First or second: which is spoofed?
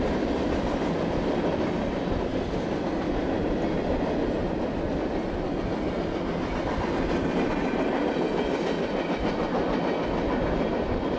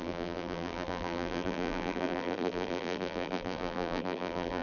second